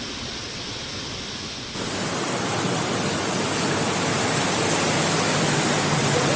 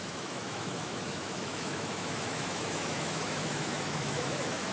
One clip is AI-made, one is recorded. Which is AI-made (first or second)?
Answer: second